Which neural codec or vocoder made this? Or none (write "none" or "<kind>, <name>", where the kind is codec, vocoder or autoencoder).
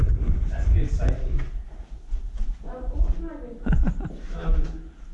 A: none